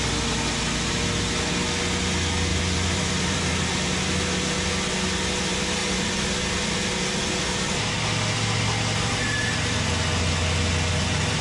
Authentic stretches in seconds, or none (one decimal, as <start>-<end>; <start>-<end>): 0.0-2.5; 3.7-11.4